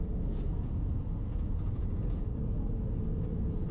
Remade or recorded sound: remade